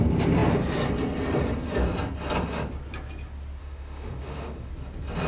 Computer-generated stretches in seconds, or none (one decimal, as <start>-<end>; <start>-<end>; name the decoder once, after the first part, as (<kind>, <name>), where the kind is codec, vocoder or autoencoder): 3.6-4.7 (autoencoder, DAC-VAE)